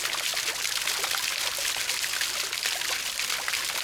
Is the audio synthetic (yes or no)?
no